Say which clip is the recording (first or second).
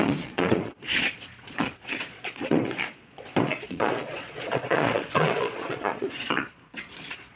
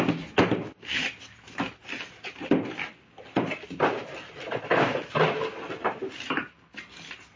second